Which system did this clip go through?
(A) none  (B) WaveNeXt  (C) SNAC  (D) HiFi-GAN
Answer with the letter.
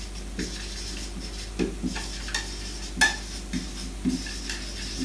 A